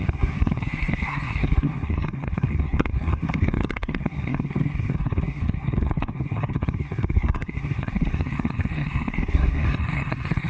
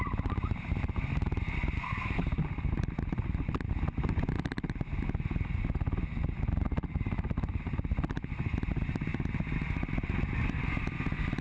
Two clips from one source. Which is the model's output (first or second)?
first